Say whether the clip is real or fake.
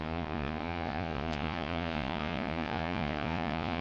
fake